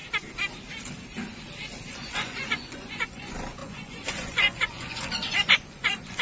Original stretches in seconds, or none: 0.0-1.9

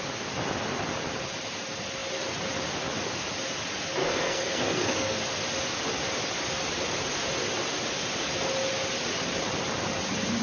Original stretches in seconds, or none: 0.0-4.0; 5.2-10.4

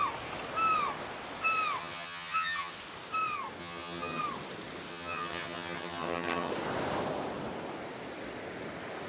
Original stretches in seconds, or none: 0.0-1.8; 2.7-3.6; 4.2-4.9; 6.5-9.1

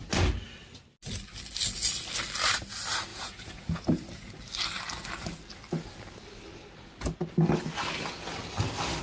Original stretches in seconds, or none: 0.0-3.1; 4.4-9.0

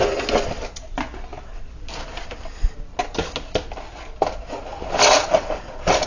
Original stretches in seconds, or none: 0.0-6.1

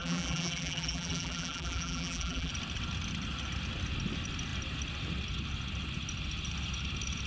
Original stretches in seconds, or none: 2.5-7.3